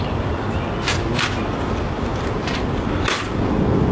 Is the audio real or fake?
real